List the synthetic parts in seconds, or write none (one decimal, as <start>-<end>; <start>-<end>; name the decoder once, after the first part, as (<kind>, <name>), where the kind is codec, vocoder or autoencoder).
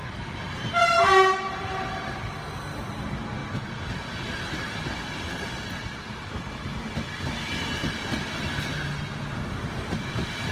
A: none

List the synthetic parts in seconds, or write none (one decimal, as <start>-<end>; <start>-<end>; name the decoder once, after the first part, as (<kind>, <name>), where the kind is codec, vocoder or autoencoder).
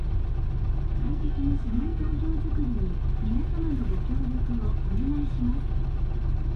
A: 1.0-2.2 (codec, SNAC)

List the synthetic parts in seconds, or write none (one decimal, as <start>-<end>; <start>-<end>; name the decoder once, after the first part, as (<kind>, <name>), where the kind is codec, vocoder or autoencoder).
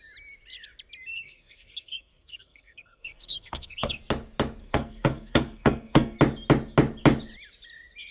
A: 1.1-4.0 (codec, SNAC); 4.6-6.2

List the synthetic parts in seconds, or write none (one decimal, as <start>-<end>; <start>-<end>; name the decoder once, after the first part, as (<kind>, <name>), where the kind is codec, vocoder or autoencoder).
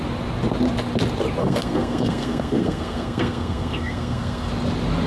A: 1.4-4.5 (codec, SNAC)